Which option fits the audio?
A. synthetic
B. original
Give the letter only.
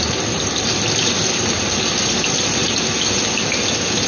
B